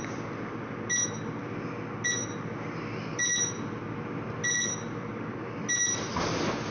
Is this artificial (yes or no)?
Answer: no